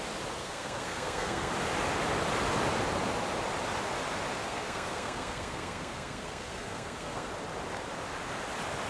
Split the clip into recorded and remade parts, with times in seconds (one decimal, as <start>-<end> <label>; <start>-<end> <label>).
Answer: 0.0-0.4 recorded; 0.4-1.5 remade; 1.5-4.4 recorded; 4.4-7.3 remade; 7.3-8.9 recorded